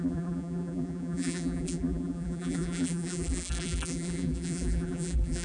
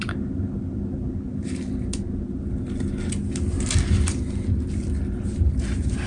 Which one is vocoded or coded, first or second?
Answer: first